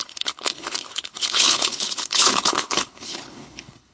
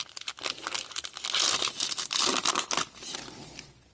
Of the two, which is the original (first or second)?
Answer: second